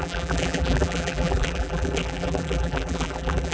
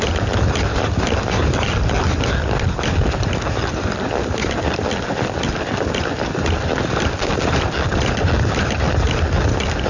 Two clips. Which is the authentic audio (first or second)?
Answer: second